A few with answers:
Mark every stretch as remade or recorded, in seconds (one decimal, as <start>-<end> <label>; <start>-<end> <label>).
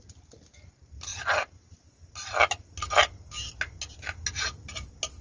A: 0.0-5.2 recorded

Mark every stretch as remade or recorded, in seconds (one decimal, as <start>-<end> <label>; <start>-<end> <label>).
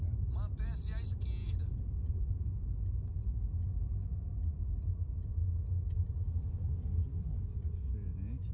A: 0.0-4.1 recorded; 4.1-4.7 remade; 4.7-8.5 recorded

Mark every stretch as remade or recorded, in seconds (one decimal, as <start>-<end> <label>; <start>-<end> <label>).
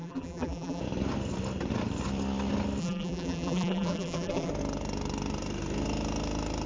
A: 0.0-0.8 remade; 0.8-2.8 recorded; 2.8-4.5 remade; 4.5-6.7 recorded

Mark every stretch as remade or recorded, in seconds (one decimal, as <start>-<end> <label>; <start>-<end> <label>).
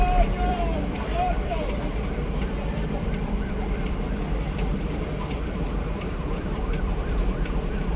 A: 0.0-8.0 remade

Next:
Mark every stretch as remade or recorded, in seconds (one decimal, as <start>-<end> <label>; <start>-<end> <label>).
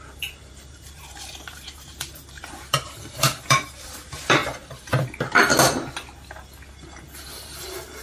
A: 0.0-5.5 remade; 5.5-7.0 recorded; 7.0-8.0 remade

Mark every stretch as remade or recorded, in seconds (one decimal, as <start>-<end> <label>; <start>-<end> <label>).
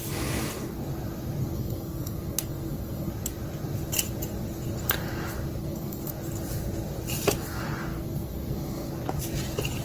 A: 0.0-1.4 recorded; 1.4-3.1 remade; 3.1-5.6 recorded; 5.6-6.1 remade; 6.1-7.9 recorded; 7.9-8.9 remade; 8.9-9.8 recorded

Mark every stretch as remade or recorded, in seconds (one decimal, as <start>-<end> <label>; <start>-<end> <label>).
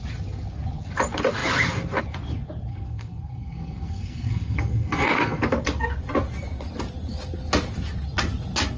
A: 0.0-2.7 recorded; 2.7-5.4 remade; 5.4-8.8 recorded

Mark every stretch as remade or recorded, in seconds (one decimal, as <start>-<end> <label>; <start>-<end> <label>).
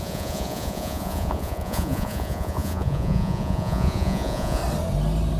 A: 0.0-4.6 remade; 4.6-5.4 recorded